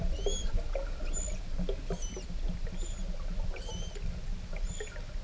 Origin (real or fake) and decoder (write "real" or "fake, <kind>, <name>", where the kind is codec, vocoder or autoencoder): real